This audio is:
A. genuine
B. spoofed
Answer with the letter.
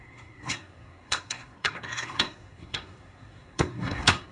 B